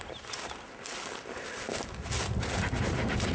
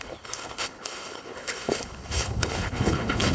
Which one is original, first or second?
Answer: first